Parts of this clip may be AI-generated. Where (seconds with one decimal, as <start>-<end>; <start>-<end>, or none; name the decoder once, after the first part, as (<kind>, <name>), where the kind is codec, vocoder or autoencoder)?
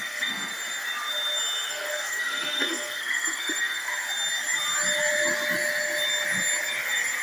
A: 0.0-0.5 (codec, SNAC); 1.7-3.9